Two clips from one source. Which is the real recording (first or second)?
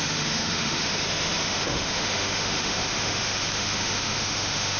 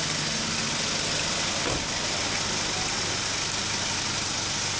second